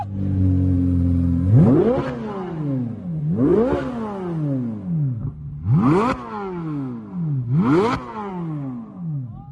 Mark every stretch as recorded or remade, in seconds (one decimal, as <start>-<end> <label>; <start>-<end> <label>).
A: 0.0-9.5 recorded